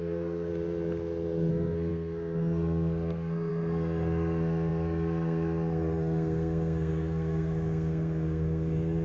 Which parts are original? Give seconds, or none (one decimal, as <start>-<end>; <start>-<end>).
0.5-1.5